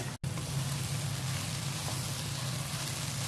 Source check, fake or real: real